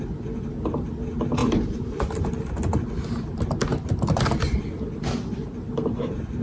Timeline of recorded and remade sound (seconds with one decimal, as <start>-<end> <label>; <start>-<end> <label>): 0.0-1.4 recorded; 1.4-2.0 remade; 2.0-3.7 recorded; 3.7-4.5 remade; 4.5-6.4 recorded